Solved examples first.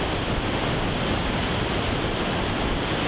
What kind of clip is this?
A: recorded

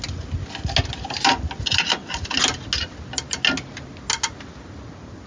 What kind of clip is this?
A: recorded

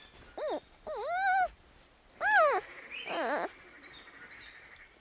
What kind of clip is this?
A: recorded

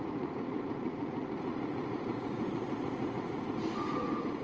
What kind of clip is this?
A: remade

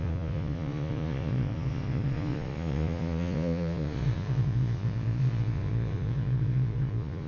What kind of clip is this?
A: remade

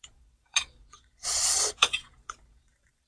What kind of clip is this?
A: remade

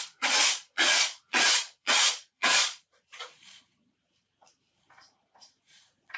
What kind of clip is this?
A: remade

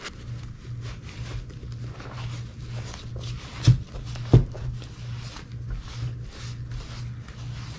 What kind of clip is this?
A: recorded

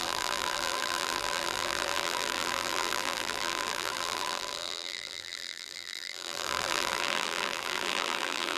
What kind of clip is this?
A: remade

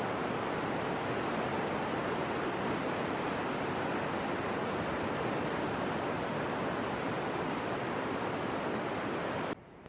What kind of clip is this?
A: recorded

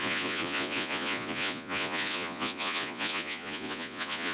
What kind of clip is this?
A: remade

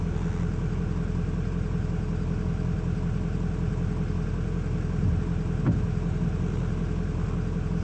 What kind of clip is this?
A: recorded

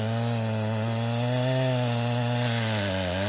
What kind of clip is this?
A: recorded